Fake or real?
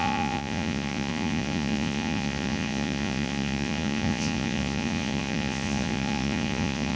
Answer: fake